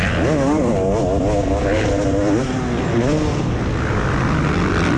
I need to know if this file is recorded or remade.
recorded